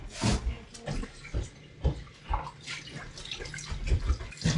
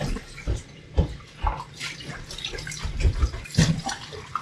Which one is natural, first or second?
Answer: first